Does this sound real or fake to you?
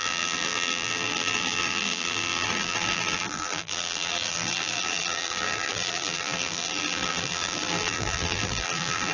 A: fake